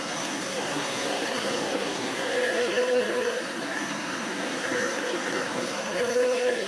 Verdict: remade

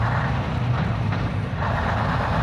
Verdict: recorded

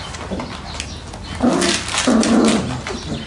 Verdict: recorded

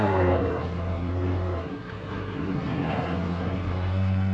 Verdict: remade